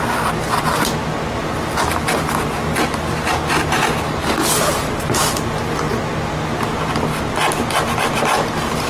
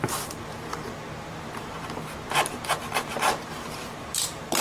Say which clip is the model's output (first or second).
second